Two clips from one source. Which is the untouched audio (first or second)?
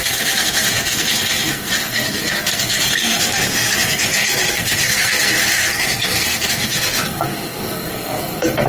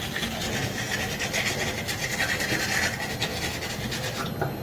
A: second